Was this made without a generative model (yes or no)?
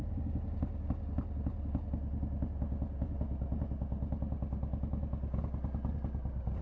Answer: yes